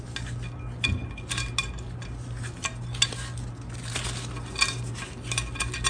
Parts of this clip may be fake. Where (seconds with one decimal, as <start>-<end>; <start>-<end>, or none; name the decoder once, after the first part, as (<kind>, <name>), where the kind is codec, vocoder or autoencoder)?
none